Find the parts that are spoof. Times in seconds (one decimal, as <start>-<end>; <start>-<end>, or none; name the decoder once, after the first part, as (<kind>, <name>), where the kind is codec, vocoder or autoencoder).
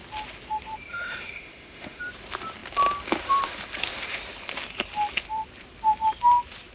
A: 0.9-2.0 (autoencoder, DAC-VAE)